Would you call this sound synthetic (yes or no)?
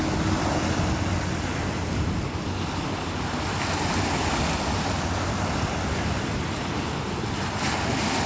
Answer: no